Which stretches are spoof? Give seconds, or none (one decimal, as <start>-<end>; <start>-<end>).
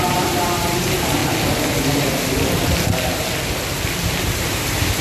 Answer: 0.0-1.2; 4.2-5.0